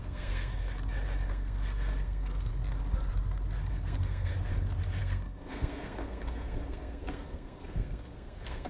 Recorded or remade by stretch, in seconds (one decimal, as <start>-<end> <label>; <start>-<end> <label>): 0.0-0.5 remade; 0.5-1.3 recorded; 1.3-2.5 remade; 2.5-3.7 recorded; 3.7-4.3 remade; 4.3-5.0 recorded; 5.0-8.7 remade